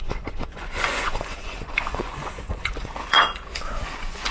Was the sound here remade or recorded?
remade